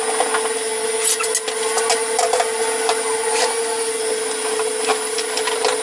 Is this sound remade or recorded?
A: recorded